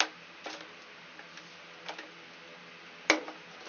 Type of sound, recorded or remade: recorded